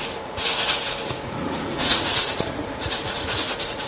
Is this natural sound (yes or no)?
no